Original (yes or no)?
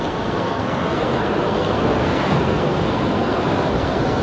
no